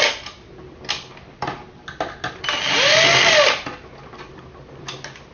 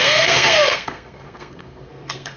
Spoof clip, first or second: second